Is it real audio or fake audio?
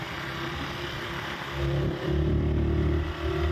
fake